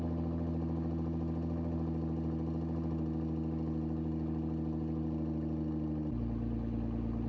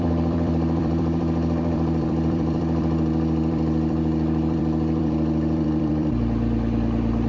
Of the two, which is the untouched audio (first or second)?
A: first